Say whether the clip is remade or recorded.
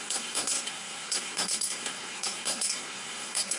remade